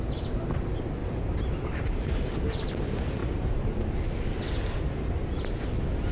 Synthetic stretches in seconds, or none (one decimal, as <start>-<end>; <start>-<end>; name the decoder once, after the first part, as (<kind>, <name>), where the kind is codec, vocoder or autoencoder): 1.0-2.1 (vocoder, BigVGAN v2); 3.2-4.0